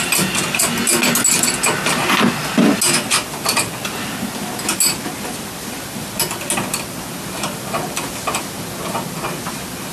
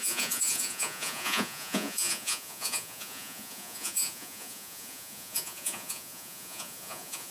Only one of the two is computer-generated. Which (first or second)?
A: second